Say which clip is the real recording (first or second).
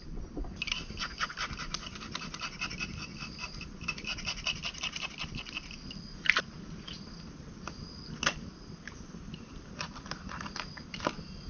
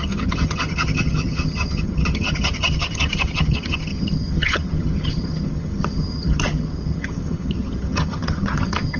first